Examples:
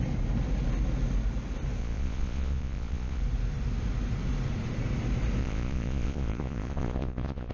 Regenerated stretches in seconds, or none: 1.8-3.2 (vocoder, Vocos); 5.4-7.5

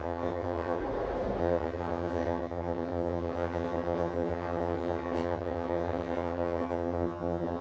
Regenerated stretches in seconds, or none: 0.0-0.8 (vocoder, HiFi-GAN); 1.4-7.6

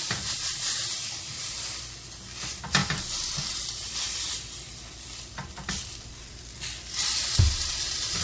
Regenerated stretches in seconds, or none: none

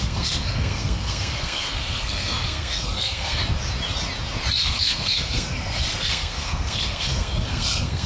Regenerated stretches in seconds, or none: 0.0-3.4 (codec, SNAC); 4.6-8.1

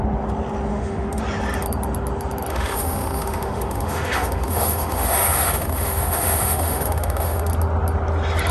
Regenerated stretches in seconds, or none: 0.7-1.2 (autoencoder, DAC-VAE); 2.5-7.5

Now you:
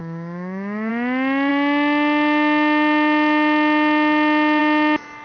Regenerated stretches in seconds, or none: 0.0-0.9 (codec, DAC)

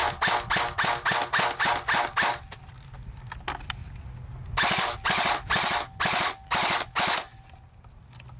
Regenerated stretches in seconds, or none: none